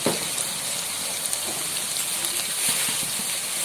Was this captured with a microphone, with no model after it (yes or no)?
no